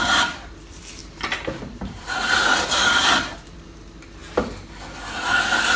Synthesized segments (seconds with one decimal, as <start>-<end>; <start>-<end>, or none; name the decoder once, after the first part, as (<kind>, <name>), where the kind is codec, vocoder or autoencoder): 1.0-3.7 (vocoder, BigVGAN v2)